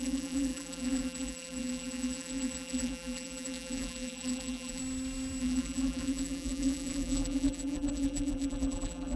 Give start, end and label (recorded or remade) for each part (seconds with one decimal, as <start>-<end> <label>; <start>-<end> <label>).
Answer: 0.0-4.8 remade; 4.8-5.4 recorded; 5.4-9.2 remade